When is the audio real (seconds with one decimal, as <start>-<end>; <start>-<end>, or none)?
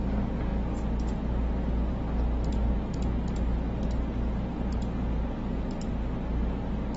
0.0-7.0